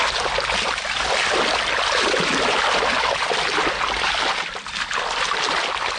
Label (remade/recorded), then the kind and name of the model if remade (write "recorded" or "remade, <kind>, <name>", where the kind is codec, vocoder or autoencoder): recorded